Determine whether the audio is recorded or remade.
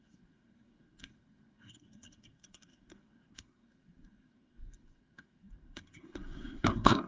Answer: remade